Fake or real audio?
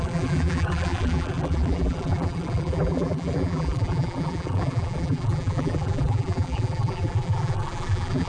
fake